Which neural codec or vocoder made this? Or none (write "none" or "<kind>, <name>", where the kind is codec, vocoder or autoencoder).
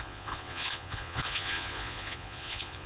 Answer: vocoder, Vocos